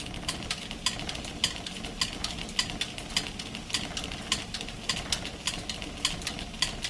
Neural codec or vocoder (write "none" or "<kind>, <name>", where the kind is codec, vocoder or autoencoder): none